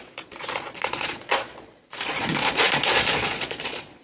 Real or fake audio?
fake